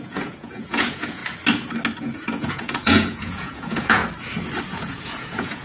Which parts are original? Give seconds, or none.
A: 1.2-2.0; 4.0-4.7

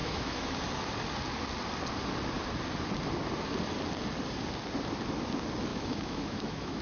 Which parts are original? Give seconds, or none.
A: 0.6-5.7

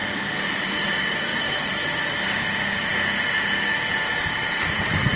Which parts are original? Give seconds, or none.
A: 0.6-1.3; 1.9-4.4

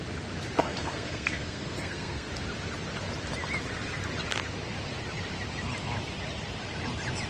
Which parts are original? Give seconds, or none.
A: 0.0-0.6; 2.3-7.3

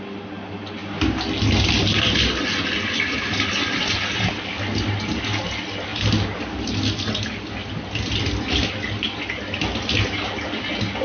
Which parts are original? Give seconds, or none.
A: 0.0-11.0

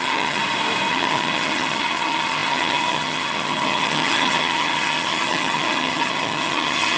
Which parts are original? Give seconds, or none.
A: 0.4-0.9